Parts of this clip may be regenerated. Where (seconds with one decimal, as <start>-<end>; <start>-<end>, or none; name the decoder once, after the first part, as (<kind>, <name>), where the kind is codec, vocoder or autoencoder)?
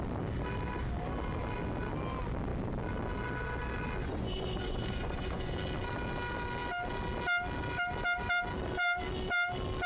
4.0-5.5 (vocoder, Vocos)